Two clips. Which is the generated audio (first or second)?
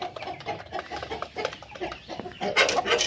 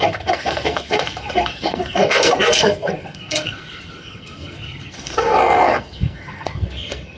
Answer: second